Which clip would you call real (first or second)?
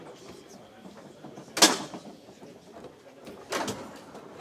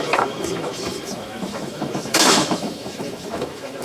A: first